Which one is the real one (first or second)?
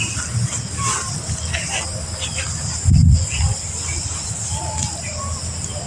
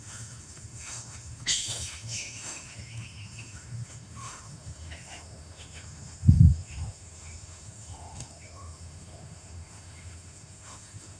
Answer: first